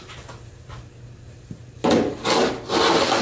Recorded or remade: recorded